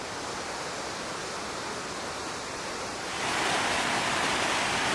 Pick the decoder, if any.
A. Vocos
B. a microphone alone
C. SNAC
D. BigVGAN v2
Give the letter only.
B